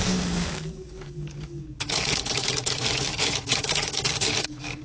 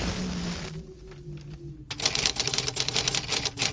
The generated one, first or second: first